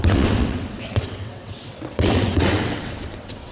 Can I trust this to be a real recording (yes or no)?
no